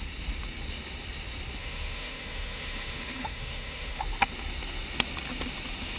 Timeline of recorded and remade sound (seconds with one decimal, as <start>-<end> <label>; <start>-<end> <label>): 0.0-1.6 recorded; 1.6-4.0 remade; 4.0-6.0 recorded